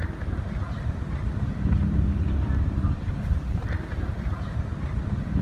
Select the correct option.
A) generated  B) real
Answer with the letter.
A